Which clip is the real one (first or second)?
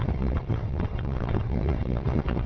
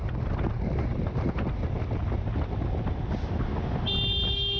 second